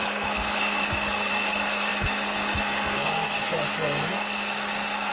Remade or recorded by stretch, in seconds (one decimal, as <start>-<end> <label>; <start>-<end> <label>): 0.0-5.1 remade